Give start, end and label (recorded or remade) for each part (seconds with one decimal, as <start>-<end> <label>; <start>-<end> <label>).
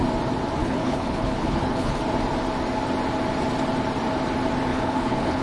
0.0-0.6 recorded; 0.6-2.0 remade; 2.0-4.7 recorded; 4.7-5.4 remade